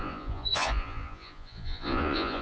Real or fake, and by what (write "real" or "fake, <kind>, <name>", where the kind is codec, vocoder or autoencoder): fake, vocoder, Vocos